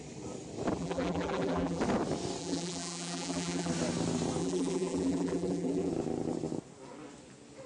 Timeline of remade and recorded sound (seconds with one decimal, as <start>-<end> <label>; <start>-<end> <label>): 0.0-0.8 recorded; 0.8-1.8 remade; 1.8-2.4 recorded; 2.4-3.7 remade; 3.7-4.4 recorded; 4.4-5.9 remade; 5.9-7.7 recorded